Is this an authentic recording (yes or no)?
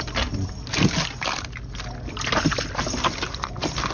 yes